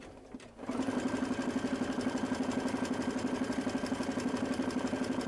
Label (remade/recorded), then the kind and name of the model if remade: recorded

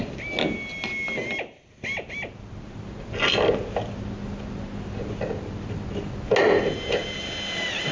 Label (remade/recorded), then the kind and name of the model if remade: recorded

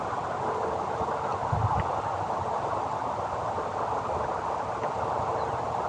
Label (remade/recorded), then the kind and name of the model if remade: recorded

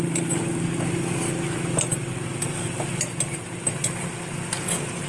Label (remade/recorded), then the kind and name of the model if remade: recorded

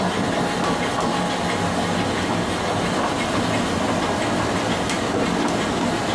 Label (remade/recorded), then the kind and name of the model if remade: recorded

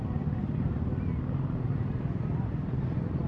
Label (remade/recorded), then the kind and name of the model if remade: recorded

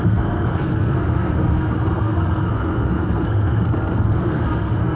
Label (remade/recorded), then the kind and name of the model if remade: remade, codec, SNAC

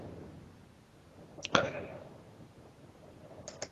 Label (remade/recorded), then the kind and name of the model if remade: recorded